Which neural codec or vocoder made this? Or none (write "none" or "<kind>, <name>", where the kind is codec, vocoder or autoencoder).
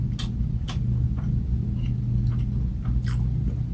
none